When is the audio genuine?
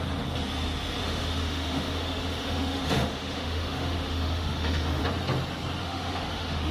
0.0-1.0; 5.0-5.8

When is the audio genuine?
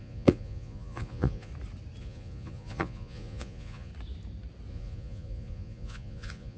1.5-2.0; 3.9-4.7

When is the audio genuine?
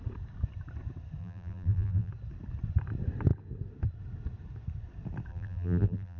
0.0-1.2; 2.1-5.3